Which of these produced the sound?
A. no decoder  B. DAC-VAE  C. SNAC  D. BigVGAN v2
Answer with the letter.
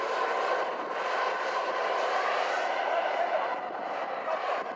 D